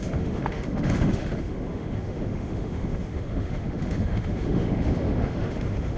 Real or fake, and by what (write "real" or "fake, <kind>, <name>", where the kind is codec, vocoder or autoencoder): fake, autoencoder, DAC-VAE